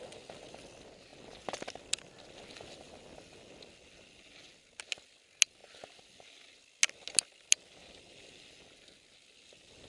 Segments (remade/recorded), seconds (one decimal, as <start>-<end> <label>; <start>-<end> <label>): 0.0-9.9 recorded